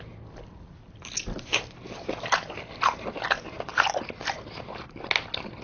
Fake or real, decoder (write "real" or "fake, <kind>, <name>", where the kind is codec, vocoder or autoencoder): real